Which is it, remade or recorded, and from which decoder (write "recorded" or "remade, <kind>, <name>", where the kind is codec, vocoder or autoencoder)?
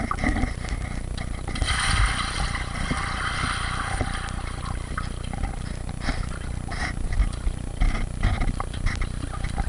recorded